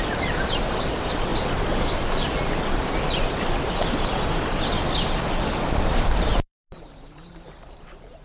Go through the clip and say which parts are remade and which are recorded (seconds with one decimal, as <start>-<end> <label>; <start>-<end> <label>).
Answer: 0.0-1.3 remade; 1.3-6.2 recorded; 6.2-8.2 remade